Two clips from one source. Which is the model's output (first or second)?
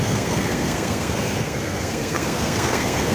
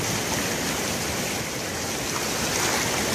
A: first